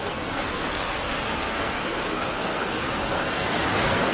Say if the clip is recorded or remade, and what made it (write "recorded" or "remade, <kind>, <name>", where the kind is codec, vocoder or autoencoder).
remade, codec, SNAC